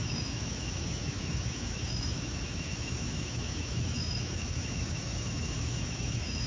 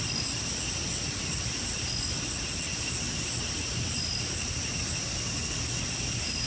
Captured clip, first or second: second